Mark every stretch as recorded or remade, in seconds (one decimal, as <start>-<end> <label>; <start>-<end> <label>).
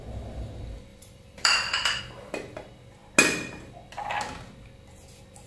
0.0-0.9 recorded; 0.9-2.0 remade; 2.0-5.5 recorded